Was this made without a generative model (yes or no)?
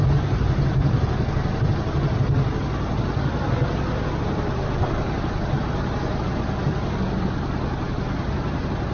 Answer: yes